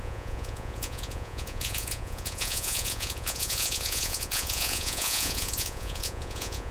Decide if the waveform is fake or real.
fake